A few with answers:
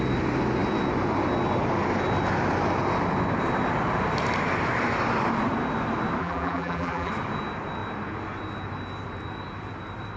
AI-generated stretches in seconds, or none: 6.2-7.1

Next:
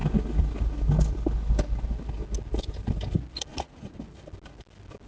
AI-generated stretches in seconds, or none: 3.5-4.0

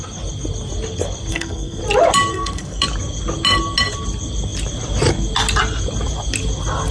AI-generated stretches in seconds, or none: 1.3-1.8; 2.3-2.8